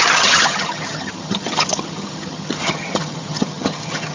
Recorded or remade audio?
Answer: remade